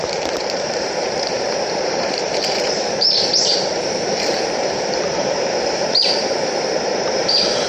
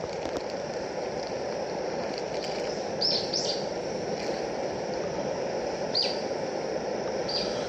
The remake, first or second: first